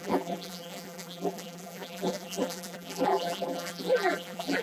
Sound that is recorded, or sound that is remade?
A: remade